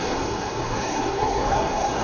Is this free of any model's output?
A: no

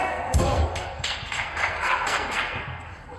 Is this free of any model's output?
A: no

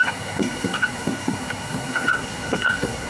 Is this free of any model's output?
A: no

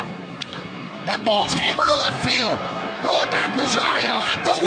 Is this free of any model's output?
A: no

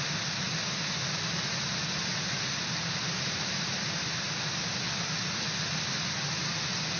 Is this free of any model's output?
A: yes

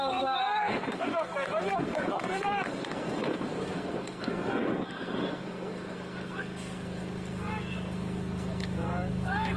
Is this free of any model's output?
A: no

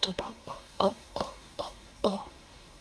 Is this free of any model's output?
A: no